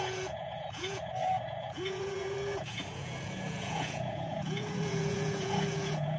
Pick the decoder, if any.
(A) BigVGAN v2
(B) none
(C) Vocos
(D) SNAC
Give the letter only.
C